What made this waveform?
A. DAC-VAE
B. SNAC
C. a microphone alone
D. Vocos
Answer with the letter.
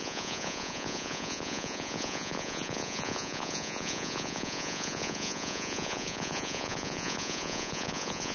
D